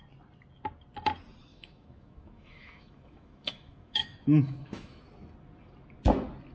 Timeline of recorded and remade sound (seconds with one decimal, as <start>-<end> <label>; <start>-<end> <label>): 0.0-1.5 recorded; 1.5-5.0 remade; 5.0-6.5 recorded